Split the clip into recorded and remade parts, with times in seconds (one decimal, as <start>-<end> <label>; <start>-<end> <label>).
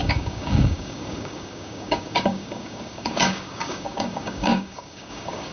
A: 0.0-5.5 remade